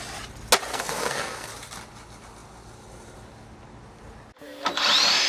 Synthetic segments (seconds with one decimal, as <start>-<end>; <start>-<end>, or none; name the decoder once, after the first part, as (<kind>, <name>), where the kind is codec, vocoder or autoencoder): 0.7-1.5 (codec, SNAC)